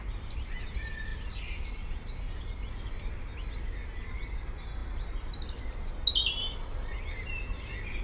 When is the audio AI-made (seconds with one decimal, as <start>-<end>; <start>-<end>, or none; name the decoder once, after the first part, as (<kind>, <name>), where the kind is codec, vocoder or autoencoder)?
none

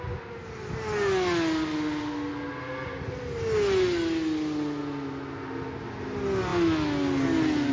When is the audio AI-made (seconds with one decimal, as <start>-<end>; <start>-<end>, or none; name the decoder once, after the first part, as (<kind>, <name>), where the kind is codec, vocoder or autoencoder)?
none

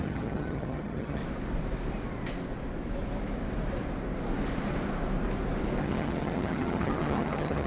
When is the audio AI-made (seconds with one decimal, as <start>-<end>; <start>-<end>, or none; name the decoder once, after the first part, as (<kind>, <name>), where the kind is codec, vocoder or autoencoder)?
0.0-1.2 (vocoder, HiFi-GAN); 5.8-7.7

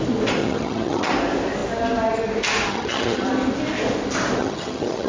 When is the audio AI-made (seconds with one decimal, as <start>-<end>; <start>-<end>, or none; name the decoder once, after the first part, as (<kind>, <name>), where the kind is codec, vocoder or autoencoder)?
0.4-1.1 (vocoder, HiFi-GAN); 2.7-3.3; 4.4-5.1

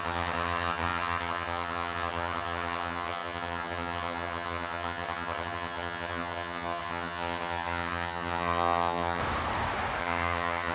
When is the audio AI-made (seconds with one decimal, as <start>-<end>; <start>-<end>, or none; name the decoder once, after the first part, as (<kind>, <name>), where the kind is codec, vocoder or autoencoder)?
0.0-9.2 (vocoder, HiFi-GAN); 10.0-10.7

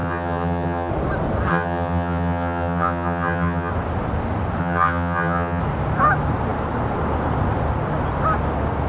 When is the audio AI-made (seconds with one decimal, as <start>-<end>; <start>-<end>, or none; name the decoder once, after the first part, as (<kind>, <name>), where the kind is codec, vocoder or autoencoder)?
0.0-0.9 (vocoder, HiFi-GAN); 1.5-3.7; 4.6-5.6

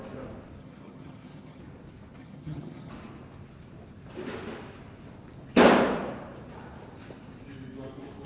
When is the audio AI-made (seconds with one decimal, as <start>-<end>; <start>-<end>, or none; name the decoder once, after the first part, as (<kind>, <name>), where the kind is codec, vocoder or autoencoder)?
0.6-1.6 (vocoder, HiFi-GAN); 2.2-2.9